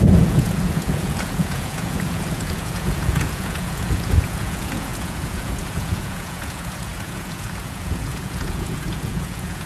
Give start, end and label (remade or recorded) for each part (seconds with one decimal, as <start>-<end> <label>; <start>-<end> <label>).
0.0-9.7 remade